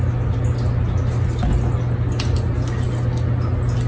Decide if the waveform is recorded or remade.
recorded